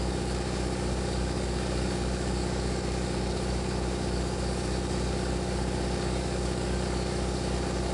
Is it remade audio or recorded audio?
remade